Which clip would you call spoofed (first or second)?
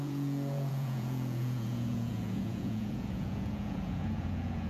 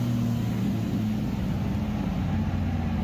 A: first